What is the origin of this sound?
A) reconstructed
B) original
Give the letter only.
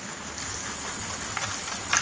B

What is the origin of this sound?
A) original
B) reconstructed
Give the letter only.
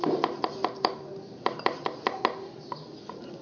A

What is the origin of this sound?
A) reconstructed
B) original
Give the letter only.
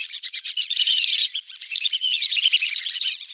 A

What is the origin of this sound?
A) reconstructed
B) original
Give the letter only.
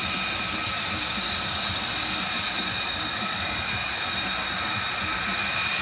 B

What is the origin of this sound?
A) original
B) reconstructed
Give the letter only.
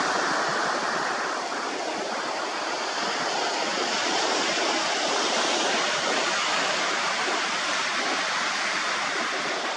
B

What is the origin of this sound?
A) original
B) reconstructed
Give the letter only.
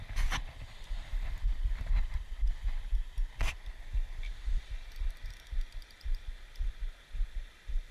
B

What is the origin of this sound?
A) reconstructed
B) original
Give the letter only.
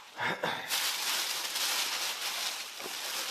B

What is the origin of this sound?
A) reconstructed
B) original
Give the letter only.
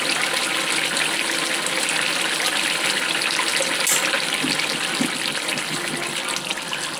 B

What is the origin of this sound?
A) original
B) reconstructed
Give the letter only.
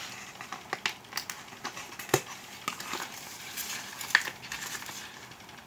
A